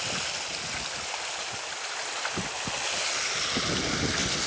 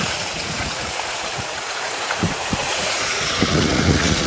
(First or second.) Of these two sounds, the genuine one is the first